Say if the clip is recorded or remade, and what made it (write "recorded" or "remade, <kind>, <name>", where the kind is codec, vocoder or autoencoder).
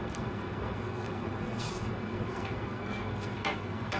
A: remade, codec, SNAC